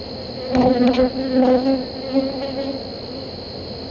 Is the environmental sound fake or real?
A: real